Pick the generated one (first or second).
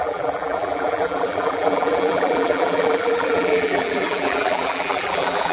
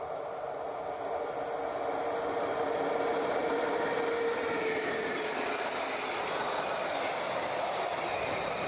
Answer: first